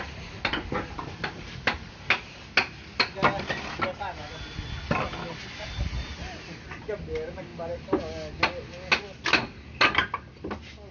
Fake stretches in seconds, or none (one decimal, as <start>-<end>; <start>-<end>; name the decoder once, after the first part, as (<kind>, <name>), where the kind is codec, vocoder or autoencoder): none